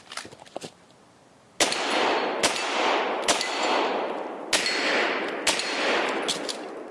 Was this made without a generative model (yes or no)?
yes